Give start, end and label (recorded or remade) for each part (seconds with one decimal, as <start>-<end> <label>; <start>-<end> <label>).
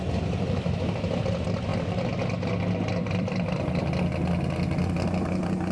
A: 0.0-3.0 recorded; 3.0-3.8 remade; 3.8-5.7 recorded